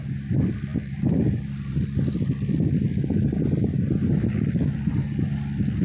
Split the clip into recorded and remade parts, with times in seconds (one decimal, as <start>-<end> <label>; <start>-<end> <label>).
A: 0.0-5.8 recorded